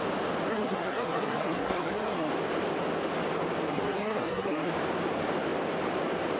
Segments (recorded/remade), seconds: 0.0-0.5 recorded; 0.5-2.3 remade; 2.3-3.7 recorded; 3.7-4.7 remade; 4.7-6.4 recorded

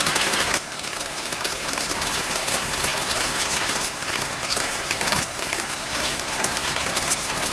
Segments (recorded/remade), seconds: 0.0-7.5 remade

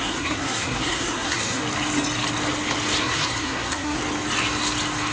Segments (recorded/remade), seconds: 0.0-1.6 remade; 1.6-3.0 recorded; 3.0-4.0 remade; 4.0-5.1 recorded

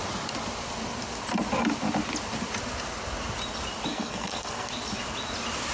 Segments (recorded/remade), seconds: 0.0-3.9 recorded; 3.9-4.7 remade; 4.7-5.7 recorded